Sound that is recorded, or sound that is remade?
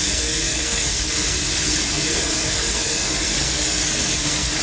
remade